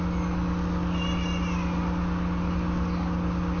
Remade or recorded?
recorded